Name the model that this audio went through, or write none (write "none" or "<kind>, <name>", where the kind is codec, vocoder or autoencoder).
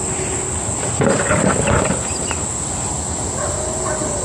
none